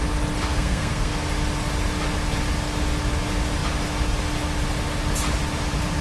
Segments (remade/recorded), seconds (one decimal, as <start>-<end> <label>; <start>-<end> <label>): 0.0-0.5 recorded; 0.5-1.1 remade; 1.1-6.0 recorded